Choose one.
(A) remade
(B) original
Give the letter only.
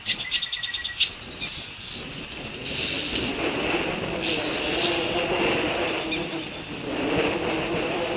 B